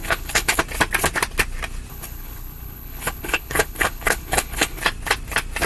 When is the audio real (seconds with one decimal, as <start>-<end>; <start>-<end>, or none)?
0.6-1.9; 4.8-5.7